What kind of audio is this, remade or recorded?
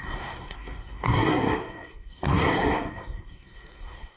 remade